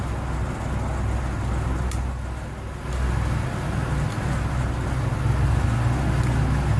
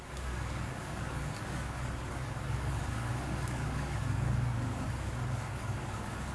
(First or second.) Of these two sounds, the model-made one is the second